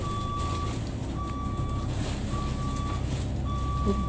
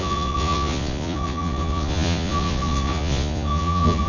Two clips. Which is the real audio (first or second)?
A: first